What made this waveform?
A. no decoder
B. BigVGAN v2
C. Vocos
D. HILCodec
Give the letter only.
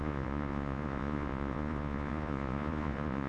C